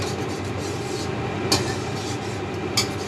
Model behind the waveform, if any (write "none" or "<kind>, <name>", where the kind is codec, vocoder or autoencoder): none